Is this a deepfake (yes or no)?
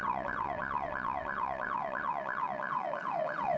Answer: yes